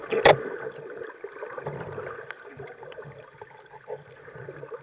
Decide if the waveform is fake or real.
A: fake